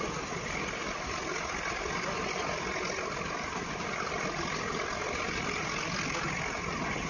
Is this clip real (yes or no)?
yes